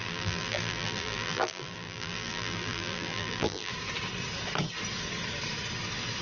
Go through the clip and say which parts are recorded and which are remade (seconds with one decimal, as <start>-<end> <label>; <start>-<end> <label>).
0.0-3.7 remade; 3.7-6.2 recorded